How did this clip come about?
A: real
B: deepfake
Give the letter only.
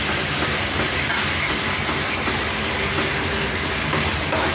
A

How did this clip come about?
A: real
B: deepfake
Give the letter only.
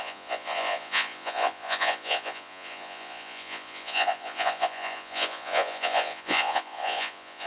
B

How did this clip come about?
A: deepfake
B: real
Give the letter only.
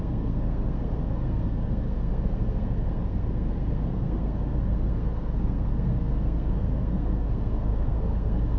A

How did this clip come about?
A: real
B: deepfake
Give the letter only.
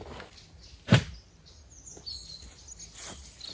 A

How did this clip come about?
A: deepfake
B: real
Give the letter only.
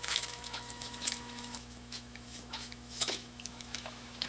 A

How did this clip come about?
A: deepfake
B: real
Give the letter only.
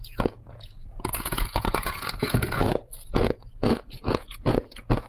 A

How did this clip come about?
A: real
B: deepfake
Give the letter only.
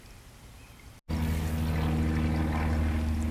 A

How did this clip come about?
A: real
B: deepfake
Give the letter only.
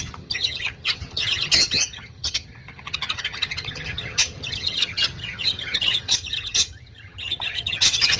B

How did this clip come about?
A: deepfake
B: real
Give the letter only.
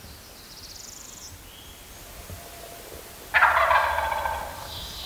B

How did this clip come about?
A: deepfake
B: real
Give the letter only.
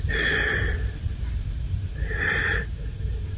B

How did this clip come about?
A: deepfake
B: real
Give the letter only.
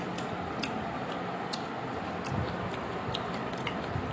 B